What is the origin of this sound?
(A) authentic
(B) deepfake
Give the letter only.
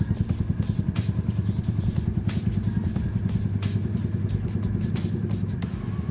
A